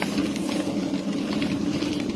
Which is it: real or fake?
real